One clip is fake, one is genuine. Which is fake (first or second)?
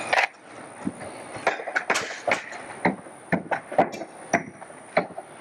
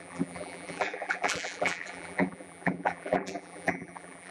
second